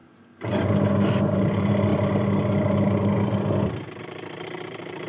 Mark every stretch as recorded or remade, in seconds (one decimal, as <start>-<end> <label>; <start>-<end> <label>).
0.0-1.2 recorded; 1.2-1.9 remade; 1.9-4.0 recorded; 4.0-5.1 remade